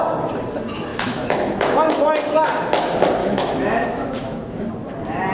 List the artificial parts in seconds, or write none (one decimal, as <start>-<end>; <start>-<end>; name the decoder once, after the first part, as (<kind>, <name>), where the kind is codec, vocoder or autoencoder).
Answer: 0.9-2.0 (autoencoder, DAC-VAE); 3.2-4.6